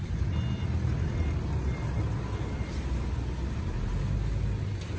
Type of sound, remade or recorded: recorded